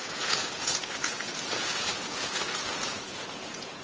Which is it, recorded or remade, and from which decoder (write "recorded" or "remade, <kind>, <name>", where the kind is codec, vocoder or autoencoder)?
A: remade, vocoder, Vocos